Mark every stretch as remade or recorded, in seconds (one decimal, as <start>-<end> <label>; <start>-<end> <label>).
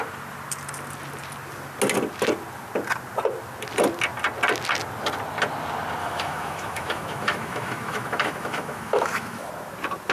0.0-6.0 recorded; 6.0-9.5 remade; 9.5-10.1 recorded